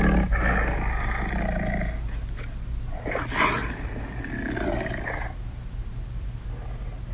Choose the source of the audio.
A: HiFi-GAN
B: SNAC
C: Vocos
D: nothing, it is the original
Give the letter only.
D